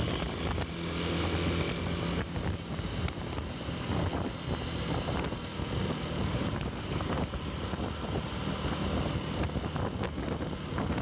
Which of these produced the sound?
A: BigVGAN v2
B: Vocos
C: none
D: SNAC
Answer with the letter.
C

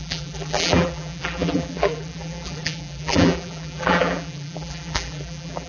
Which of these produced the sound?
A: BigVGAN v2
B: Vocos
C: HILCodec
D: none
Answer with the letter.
A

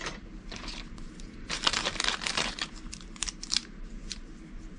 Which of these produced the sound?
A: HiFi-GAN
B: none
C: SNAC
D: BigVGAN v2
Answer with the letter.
D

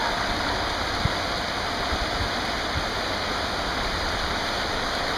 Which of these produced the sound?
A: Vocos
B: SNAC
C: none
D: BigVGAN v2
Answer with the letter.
C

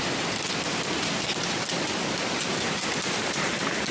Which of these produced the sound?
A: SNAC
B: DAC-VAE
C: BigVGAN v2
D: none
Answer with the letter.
D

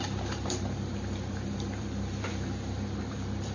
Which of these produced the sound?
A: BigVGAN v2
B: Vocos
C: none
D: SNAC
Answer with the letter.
A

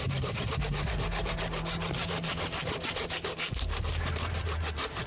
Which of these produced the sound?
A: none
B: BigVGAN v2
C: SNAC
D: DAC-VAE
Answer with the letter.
B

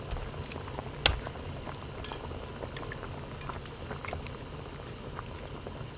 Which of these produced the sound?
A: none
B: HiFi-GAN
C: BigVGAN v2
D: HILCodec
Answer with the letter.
A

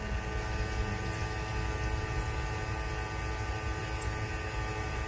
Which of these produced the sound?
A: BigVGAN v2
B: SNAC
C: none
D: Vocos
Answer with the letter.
C